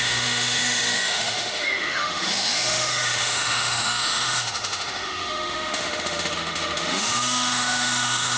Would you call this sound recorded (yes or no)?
no